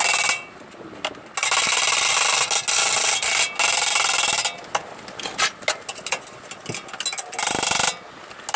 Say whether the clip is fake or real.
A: real